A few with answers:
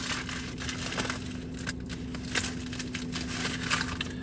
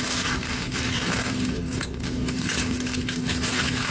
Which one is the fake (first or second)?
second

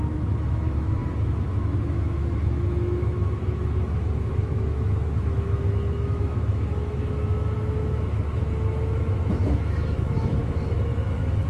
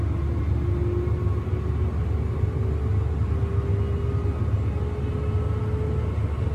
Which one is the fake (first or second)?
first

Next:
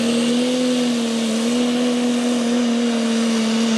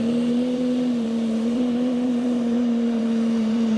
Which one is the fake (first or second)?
second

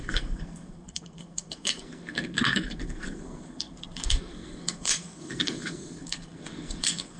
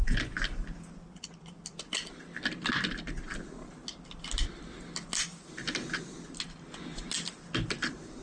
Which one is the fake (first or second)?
first